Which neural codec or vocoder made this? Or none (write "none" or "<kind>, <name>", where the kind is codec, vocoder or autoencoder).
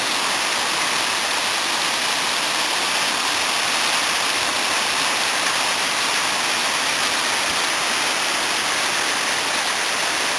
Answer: none